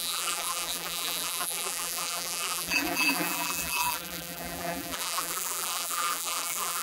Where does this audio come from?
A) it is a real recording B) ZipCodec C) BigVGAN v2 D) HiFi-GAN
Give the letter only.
C